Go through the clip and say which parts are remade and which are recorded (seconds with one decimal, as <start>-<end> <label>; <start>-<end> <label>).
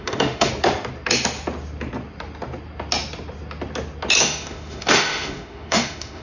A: 0.0-0.5 remade; 0.5-4.2 recorded; 4.2-6.2 remade